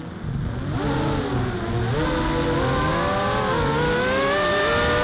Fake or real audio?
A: real